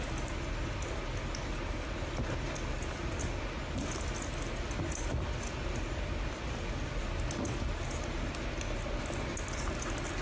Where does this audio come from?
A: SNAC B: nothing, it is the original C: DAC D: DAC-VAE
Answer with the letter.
B